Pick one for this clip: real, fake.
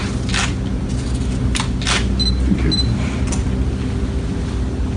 real